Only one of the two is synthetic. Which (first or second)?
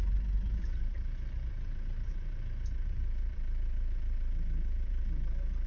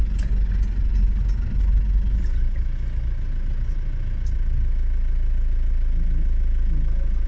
first